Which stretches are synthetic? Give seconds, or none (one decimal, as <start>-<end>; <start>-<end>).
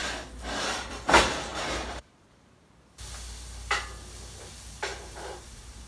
1.5-2.2; 4.9-5.9